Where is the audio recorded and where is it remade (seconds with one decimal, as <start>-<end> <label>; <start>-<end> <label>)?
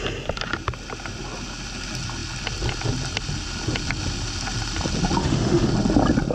0.0-5.2 recorded; 5.2-5.7 remade; 5.7-6.3 recorded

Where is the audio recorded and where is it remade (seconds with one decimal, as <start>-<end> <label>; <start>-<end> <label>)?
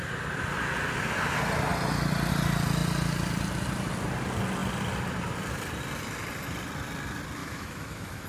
0.0-7.4 recorded; 7.4-8.3 remade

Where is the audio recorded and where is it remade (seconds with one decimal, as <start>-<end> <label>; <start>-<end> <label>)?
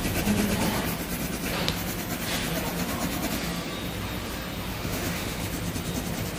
0.0-4.7 recorded; 4.7-5.4 remade; 5.4-6.4 recorded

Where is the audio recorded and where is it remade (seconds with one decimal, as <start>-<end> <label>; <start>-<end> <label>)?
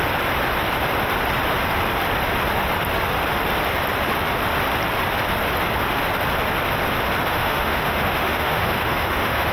0.0-7.3 recorded; 7.3-9.5 remade